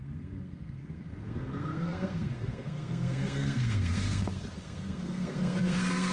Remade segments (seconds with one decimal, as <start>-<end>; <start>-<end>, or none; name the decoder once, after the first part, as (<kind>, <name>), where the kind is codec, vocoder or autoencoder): 0.0-6.1 (codec, SNAC)

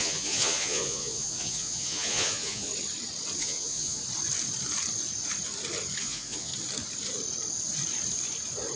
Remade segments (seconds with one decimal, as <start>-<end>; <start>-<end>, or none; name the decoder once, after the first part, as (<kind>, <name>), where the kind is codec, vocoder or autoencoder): 0.0-2.7 (vocoder, Vocos); 3.4-4.0; 6.0-6.5

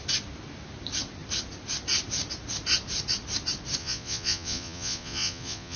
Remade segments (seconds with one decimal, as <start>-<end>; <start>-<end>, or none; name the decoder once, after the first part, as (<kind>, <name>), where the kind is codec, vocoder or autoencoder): 3.8-5.8 (vocoder, Vocos)

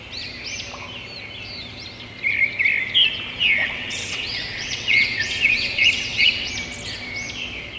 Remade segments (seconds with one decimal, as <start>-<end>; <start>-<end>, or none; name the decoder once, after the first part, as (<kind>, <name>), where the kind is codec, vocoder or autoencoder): 3.6-6.5 (vocoder, WaveNeXt)

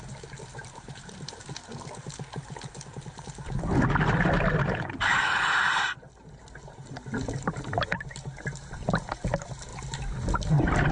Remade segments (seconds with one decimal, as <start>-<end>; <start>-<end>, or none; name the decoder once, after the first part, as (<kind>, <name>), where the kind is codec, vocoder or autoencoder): 0.5-1.3 (vocoder, BigVGAN v2)